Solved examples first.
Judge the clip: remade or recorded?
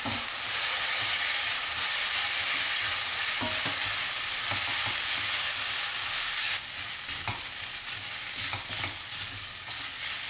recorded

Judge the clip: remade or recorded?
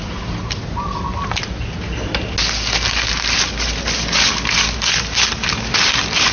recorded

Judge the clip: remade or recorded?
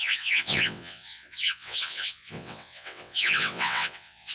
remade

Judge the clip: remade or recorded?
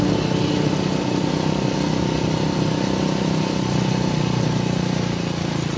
recorded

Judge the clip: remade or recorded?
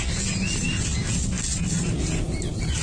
recorded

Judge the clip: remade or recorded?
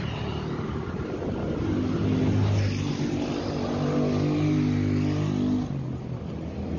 recorded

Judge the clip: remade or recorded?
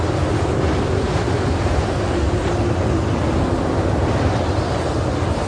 recorded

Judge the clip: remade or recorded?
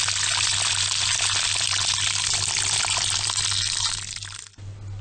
recorded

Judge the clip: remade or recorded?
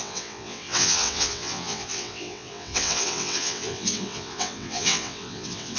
remade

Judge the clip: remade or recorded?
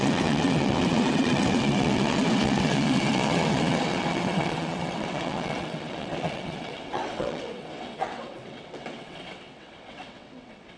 remade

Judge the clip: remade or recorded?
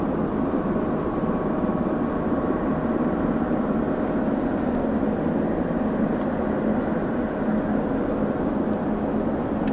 recorded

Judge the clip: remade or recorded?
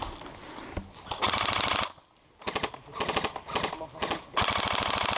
recorded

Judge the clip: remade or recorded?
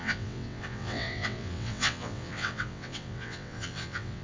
remade